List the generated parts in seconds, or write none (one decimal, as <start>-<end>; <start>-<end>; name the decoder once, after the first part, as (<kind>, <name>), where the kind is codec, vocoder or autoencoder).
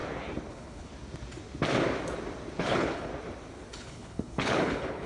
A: 0.5-0.9 (codec, HILCodec); 2.6-3.1; 3.7-5.1